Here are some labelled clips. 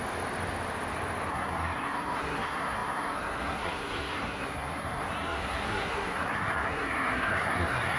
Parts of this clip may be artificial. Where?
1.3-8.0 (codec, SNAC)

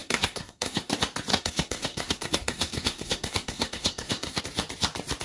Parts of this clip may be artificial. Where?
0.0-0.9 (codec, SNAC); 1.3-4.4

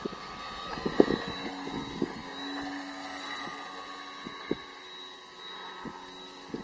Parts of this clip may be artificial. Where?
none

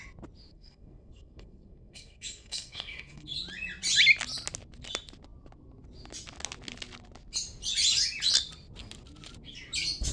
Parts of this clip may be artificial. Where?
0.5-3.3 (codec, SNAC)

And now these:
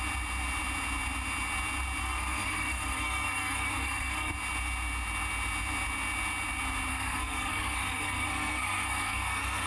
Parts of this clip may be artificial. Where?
2.0-4.3 (codec, SNAC); 6.9-9.7

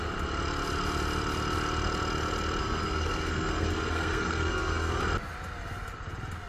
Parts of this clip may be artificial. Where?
2.6-5.0 (codec, SNAC)

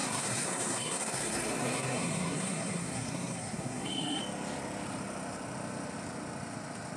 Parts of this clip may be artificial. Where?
0.0-4.2 (codec, SNAC)

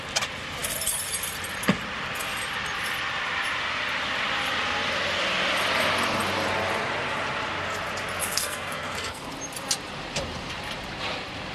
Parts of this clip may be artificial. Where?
8.2-9.3 (codec, SNAC)